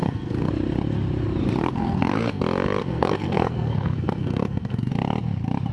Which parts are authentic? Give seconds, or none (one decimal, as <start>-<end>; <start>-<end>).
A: 0.5-1.6; 2.4-2.8; 4.9-5.7